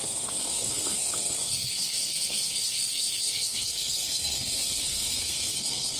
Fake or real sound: fake